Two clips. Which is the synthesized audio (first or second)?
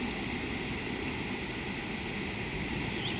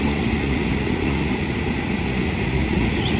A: second